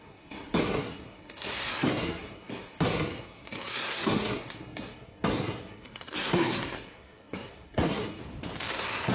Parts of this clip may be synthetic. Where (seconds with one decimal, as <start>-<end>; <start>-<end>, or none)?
0.0-8.2; 8.7-9.1